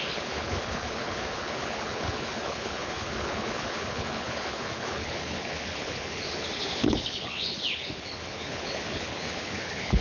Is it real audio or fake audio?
fake